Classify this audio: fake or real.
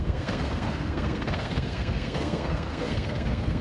fake